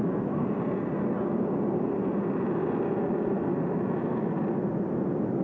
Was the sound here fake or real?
real